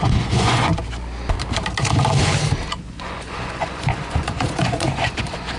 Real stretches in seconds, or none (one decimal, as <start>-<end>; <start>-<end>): 0.7-2.8